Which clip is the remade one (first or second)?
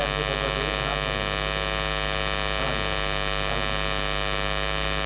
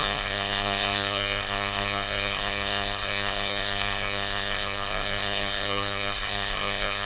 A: second